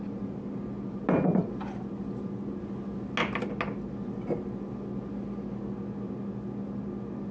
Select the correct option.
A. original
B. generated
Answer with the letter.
A